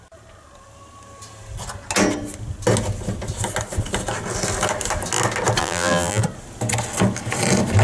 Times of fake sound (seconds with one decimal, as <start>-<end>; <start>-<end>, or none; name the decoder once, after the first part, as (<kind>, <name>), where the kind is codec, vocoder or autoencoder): 5.6-6.2 (vocoder, BigVGAN v2)